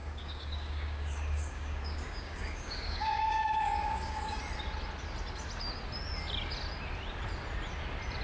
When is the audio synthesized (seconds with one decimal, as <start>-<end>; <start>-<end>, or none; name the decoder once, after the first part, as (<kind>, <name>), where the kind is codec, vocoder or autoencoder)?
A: 0.0-4.4 (codec, DAC)